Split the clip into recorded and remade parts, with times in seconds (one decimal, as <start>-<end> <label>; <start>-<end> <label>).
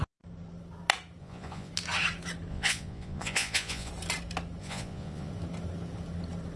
0.0-1.2 recorded; 1.2-1.7 remade; 1.7-2.5 recorded; 2.5-3.9 remade; 3.9-4.6 recorded; 4.6-5.3 remade; 5.3-6.6 recorded